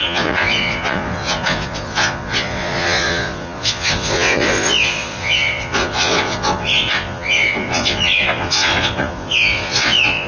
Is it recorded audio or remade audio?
remade